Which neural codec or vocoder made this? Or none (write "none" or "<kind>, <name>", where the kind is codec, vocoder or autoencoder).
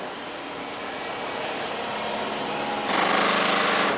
none